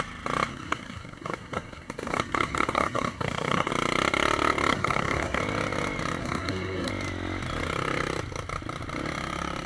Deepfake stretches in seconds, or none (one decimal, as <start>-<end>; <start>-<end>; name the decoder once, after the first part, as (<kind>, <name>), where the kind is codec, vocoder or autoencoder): 0.5-3.7 (codec, SNAC); 4.7-5.4; 6.2-6.9